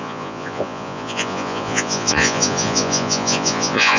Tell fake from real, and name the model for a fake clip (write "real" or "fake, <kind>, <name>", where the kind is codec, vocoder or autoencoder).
fake, vocoder, Vocos